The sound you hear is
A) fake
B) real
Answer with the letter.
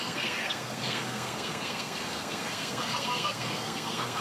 A